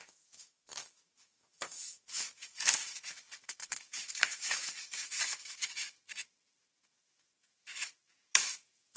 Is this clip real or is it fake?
fake